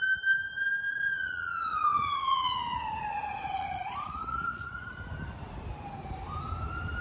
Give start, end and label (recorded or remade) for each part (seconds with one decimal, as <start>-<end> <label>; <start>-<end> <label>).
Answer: 0.0-0.9 recorded; 0.9-4.9 remade; 4.9-7.0 recorded